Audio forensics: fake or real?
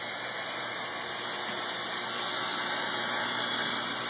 real